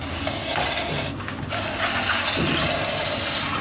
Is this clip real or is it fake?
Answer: real